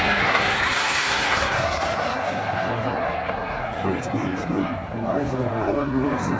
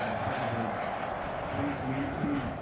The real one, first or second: second